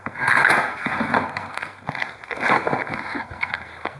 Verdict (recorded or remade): remade